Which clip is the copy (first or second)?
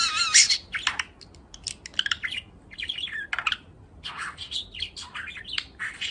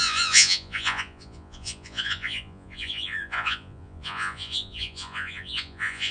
second